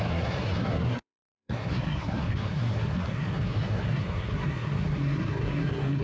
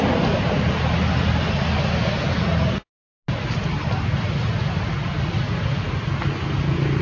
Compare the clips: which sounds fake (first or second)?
first